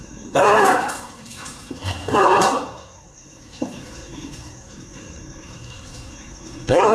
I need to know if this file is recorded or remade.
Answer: remade